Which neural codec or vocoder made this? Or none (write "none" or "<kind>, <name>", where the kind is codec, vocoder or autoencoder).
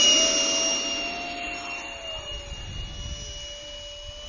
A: none